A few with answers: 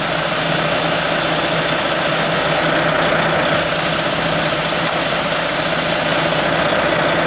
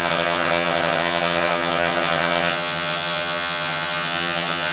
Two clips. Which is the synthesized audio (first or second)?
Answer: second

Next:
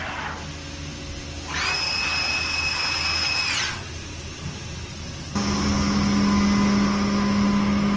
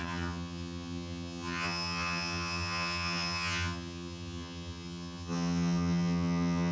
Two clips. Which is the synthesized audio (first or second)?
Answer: second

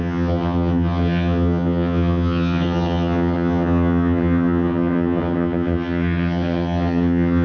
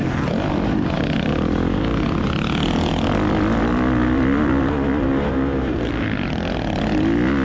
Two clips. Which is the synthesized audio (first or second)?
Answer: first